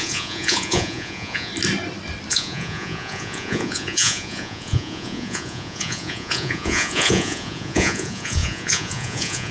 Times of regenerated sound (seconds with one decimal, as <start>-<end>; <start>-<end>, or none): 0.0-1.5; 2.3-9.5